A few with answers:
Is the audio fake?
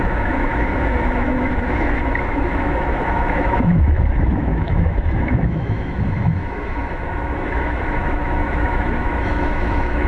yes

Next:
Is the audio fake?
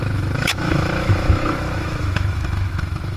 yes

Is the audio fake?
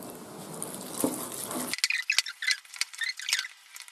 no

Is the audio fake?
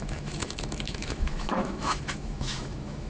yes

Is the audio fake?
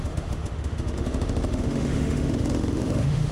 yes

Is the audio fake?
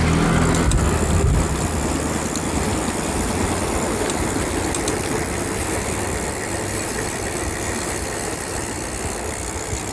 no